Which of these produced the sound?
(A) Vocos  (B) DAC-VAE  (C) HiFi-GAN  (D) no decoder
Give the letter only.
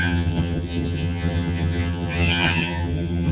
C